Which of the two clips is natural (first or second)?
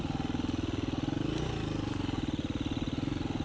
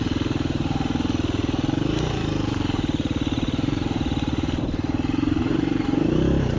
first